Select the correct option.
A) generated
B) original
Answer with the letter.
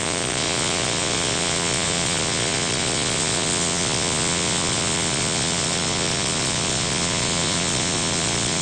A